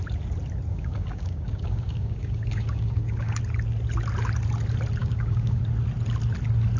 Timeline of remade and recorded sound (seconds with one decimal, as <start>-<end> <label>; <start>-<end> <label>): 0.0-0.7 recorded; 0.7-3.4 remade; 3.4-5.0 recorded; 5.0-5.6 remade; 5.6-6.8 recorded